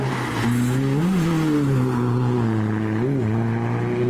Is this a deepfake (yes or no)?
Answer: no